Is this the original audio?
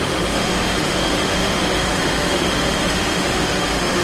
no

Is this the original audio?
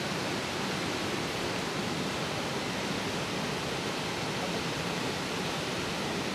yes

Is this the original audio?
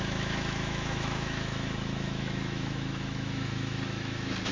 no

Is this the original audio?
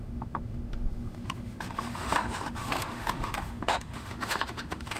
no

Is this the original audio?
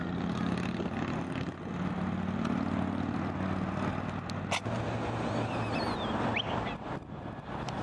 yes